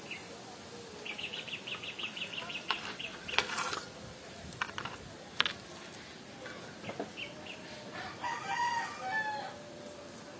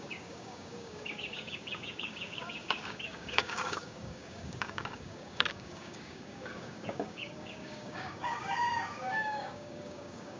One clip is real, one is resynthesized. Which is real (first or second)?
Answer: first